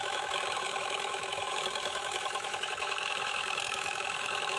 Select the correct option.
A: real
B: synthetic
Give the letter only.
B